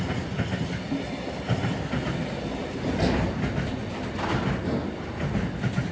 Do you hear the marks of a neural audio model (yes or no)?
no